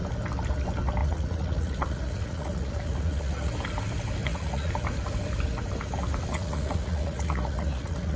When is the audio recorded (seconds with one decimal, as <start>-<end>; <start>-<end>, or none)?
0.0-1.0; 3.5-4.2; 4.7-6.3